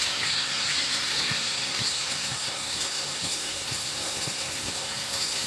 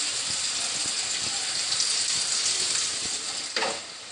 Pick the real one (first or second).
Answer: second